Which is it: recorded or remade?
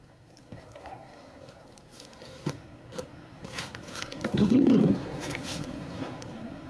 remade